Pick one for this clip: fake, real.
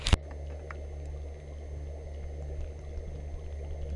real